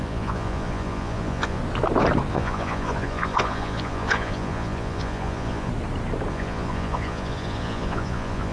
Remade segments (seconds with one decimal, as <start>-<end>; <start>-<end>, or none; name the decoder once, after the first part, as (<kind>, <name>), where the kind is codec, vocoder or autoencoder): 0.0-1.6 (vocoder, Vocos); 2.3-5.7; 6.3-8.5